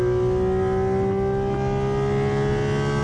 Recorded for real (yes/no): yes